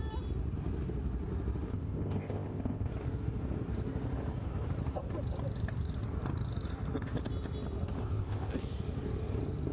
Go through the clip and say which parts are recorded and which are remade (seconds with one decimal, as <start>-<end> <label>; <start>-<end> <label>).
0.0-1.7 recorded; 1.7-2.9 remade; 2.9-8.0 recorded; 8.0-8.5 remade; 8.5-9.7 recorded